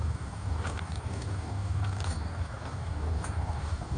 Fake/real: fake